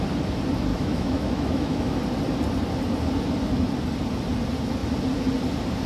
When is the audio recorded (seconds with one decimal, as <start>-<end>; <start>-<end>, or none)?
0.0-0.7; 2.0-5.9